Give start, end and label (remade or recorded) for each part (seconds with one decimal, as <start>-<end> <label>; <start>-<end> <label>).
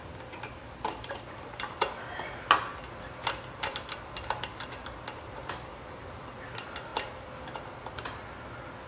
0.0-8.9 recorded